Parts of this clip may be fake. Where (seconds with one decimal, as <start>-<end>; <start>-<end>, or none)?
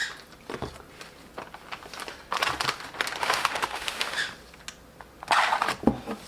3.2-4.3